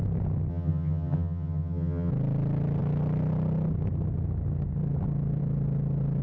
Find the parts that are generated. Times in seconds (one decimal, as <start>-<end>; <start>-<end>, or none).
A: 0.5-2.1